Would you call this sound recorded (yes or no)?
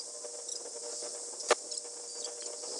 yes